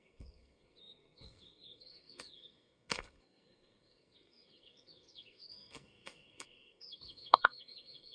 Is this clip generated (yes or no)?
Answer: yes